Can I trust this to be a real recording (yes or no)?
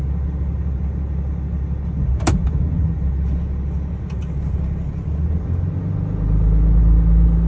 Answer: yes